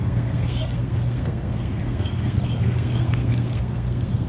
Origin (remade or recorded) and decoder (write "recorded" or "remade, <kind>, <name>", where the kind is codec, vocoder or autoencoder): remade, codec, SNAC